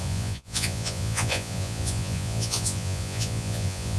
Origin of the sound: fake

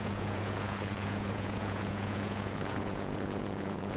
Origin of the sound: fake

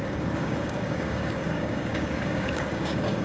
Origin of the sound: fake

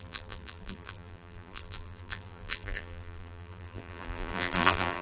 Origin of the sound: fake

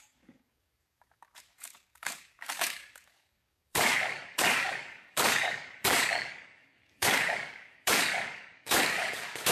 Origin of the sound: fake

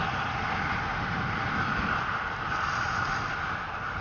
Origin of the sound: real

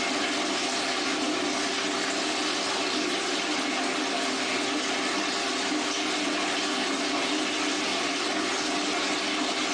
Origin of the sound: real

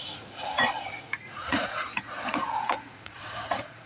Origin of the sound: fake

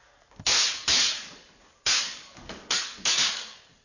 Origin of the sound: fake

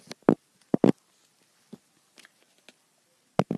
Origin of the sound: real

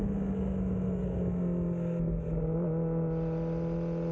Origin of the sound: real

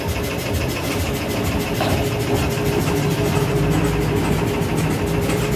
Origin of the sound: real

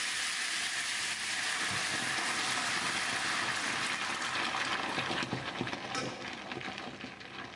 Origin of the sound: real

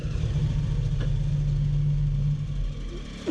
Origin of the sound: real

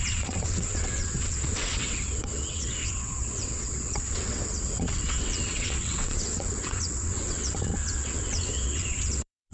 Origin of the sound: fake